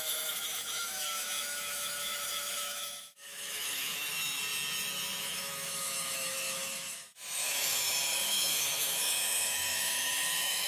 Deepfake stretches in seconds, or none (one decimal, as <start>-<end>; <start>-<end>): 0.0-4.4; 5.2-10.7